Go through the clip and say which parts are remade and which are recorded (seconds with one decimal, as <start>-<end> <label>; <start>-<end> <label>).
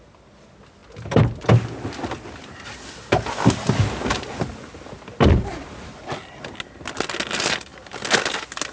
0.0-8.7 recorded